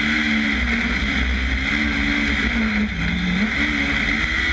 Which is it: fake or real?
real